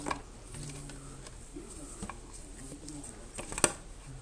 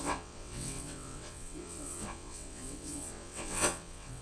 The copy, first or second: second